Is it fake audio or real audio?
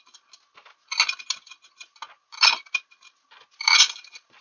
real